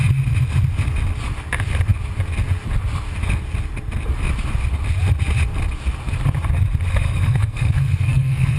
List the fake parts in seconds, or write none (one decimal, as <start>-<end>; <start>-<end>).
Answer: 6.9-8.6